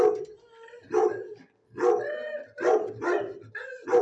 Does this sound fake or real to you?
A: real